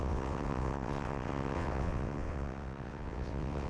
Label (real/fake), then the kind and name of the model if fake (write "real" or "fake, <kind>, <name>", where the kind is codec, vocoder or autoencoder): fake, vocoder, WaveNeXt